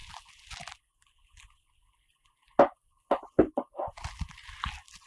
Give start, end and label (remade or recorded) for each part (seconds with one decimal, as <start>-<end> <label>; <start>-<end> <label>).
0.0-2.8 recorded; 2.8-3.4 remade; 3.4-5.1 recorded